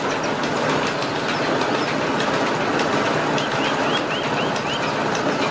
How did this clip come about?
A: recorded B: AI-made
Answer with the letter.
A